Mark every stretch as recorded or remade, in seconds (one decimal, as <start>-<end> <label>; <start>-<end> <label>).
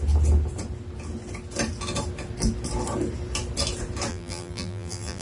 0.0-4.1 recorded; 4.1-5.2 remade